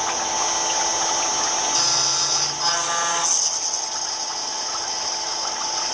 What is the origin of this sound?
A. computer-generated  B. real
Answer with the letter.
B